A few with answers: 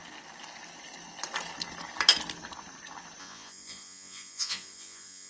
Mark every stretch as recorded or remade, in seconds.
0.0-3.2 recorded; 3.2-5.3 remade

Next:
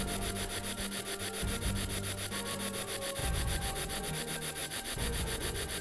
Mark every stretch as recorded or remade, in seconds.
0.0-3.2 recorded; 3.2-4.1 remade; 4.1-4.6 recorded; 4.6-5.8 remade